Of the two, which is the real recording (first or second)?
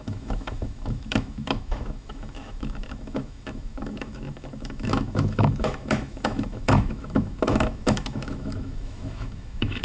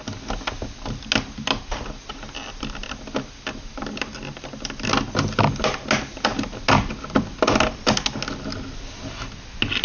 second